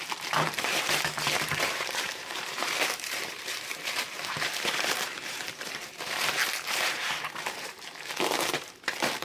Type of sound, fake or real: fake